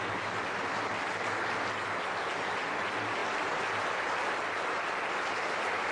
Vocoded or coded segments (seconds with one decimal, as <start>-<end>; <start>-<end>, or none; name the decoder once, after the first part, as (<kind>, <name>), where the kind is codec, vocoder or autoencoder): none